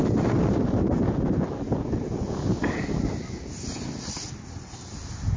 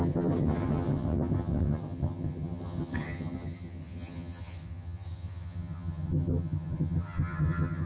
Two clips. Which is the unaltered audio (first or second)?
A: first